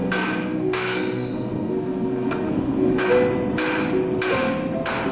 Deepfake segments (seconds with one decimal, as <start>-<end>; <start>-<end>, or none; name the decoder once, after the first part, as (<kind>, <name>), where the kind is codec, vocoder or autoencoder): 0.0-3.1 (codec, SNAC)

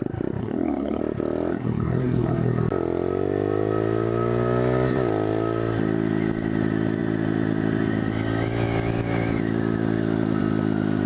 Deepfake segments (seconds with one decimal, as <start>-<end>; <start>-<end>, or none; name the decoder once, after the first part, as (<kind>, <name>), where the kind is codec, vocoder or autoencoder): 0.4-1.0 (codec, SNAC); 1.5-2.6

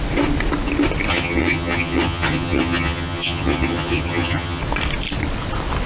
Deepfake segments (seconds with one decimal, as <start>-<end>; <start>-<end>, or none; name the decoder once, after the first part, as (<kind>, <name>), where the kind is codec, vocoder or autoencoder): 1.1-4.6 (vocoder, HiFi-GAN)

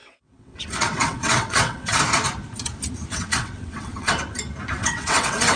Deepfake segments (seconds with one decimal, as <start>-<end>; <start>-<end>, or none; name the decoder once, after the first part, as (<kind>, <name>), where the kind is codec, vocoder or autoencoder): 0.0-2.0 (vocoder, WaveNeXt); 3.1-4.1; 4.8-5.6

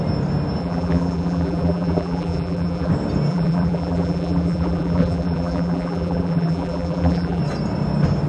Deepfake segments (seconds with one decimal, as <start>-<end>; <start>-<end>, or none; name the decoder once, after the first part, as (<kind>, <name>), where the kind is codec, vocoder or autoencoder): 0.6-2.9 (vocoder, BigVGAN v2); 3.3-7.4

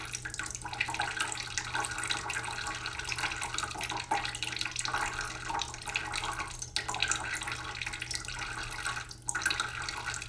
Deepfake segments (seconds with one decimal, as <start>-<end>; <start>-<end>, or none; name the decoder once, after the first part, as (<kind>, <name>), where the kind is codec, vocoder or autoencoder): none

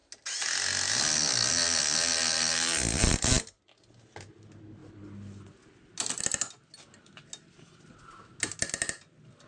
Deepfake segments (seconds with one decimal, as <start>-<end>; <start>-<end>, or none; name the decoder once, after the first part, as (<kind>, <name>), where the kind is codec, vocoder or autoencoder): none

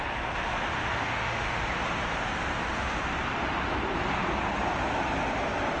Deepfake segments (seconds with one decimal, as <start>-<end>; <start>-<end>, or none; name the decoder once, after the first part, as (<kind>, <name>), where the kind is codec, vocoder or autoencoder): 0.9-1.6 (autoencoder, DAC-VAE)